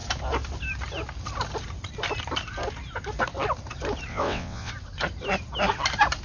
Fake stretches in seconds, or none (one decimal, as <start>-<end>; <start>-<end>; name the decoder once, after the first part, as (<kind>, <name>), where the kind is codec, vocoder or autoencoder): 4.1-4.7 (vocoder, WaveNeXt)